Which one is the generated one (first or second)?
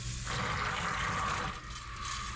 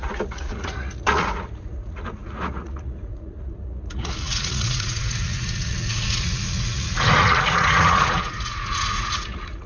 second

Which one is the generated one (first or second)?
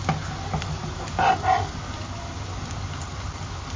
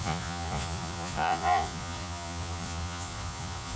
second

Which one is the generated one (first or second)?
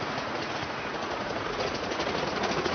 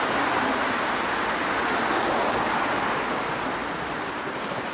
first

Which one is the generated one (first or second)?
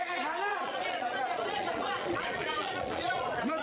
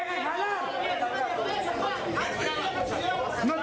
first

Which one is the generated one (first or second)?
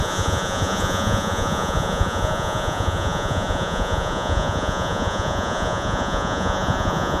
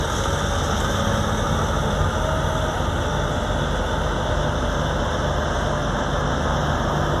first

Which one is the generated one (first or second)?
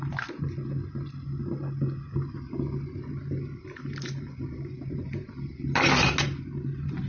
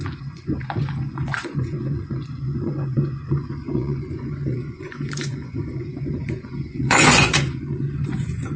second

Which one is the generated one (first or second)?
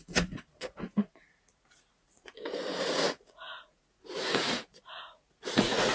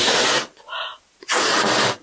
first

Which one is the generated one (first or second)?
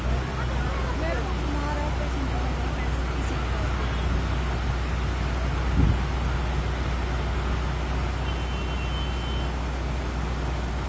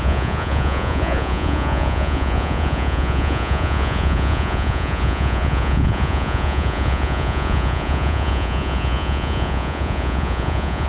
second